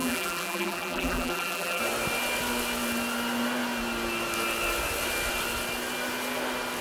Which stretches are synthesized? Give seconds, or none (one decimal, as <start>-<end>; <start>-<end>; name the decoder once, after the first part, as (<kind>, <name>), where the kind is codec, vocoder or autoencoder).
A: 0.0-1.8 (vocoder, BigVGAN v2)